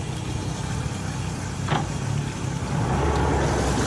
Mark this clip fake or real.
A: real